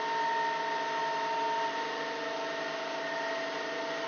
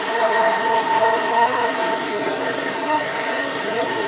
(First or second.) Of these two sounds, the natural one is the first